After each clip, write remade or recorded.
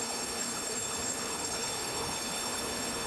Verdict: remade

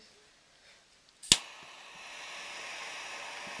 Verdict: recorded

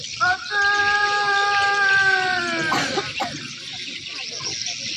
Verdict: recorded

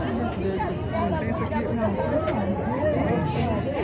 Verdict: recorded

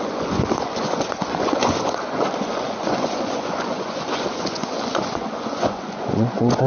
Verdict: remade